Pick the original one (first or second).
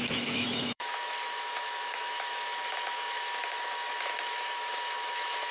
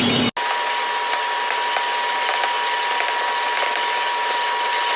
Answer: second